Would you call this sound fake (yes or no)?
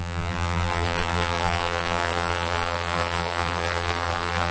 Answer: yes